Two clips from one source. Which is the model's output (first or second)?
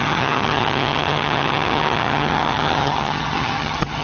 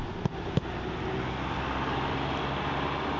first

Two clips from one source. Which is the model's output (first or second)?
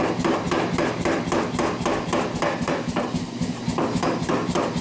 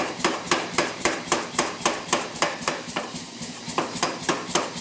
second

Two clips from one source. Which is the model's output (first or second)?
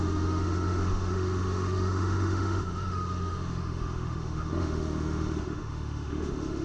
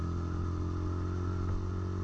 first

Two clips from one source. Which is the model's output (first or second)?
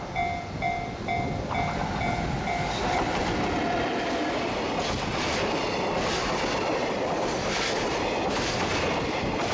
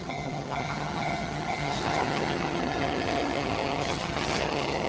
second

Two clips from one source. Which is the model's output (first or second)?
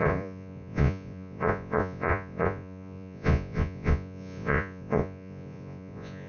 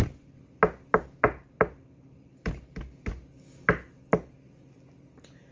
first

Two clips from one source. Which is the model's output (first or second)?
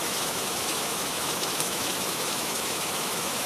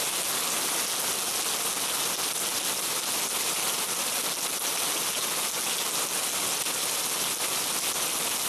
first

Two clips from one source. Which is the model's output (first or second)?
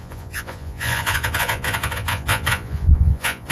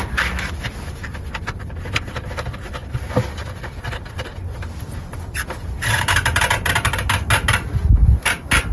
first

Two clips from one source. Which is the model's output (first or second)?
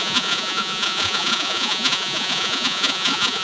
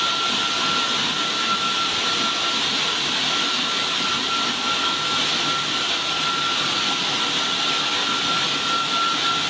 first